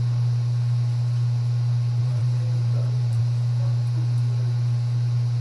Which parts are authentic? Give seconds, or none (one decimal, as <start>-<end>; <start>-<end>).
0.0-2.0; 3.2-5.4